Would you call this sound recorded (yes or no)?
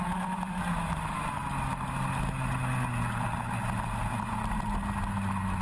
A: yes